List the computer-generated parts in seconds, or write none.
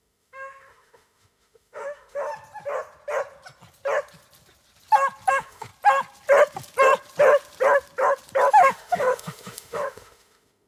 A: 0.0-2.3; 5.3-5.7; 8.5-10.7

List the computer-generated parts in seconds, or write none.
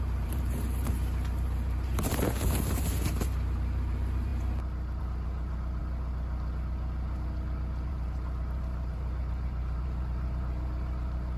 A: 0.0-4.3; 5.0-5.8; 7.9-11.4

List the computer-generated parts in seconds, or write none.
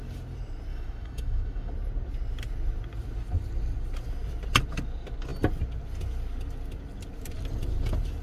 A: 0.7-1.7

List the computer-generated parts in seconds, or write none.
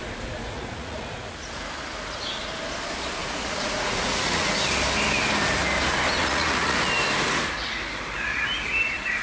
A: 0.4-1.6; 3.2-4.6; 6.2-6.8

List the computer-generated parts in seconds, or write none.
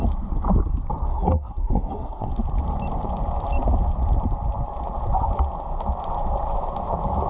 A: 1.1-2.3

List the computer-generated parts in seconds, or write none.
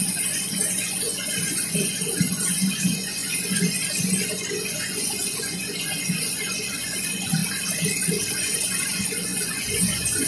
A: 0.0-7.4; 8.3-10.3